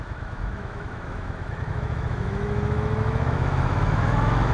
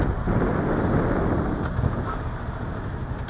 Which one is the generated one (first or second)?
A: first